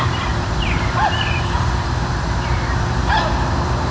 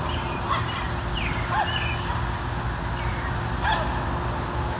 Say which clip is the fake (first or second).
first